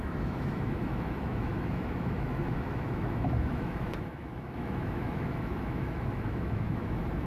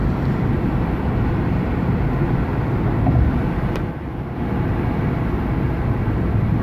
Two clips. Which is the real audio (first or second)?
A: second